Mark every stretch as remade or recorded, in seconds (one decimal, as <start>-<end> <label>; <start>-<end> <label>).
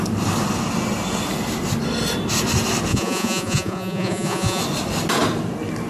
0.0-2.9 recorded; 2.9-4.6 remade; 4.6-5.9 recorded